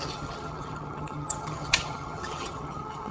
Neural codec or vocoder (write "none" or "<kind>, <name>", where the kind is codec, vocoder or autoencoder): vocoder, HiFi-GAN